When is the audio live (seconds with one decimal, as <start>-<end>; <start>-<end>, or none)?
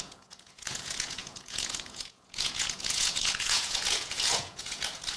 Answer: none